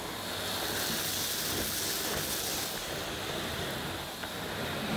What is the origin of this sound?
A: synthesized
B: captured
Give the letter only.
B